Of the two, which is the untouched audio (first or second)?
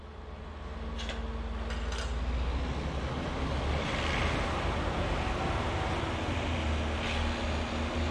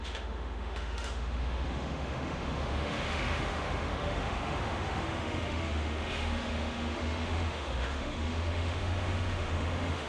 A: first